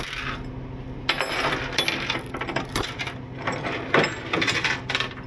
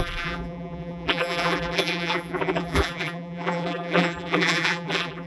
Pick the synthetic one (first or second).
second